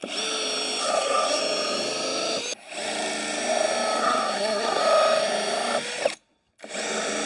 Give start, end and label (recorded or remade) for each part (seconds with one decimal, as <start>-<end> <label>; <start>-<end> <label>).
0.0-0.8 recorded; 0.8-1.4 remade; 1.4-4.0 recorded; 4.0-4.8 remade; 4.8-7.3 recorded